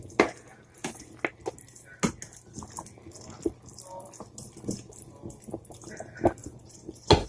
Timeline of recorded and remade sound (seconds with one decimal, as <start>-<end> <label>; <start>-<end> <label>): 0.0-6.4 recorded; 6.4-7.3 remade

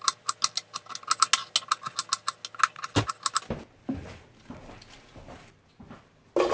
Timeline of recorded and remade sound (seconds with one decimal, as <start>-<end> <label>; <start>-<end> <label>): 0.0-6.5 recorded

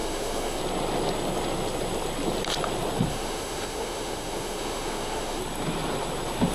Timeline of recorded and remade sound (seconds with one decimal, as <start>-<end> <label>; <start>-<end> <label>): 0.0-0.6 remade; 0.6-3.1 recorded; 3.1-5.4 remade; 5.4-6.5 recorded

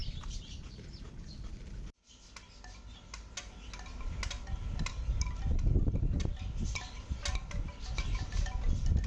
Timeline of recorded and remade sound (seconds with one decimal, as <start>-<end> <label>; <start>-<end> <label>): 0.0-9.1 recorded

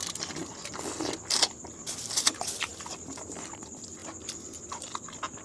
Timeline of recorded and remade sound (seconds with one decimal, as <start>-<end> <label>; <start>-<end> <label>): 0.0-5.4 recorded

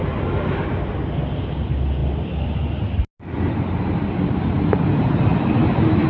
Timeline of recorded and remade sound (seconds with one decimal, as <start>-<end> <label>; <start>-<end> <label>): 0.0-2.0 recorded; 2.0-2.7 remade; 2.7-5.3 recorded; 5.3-6.1 remade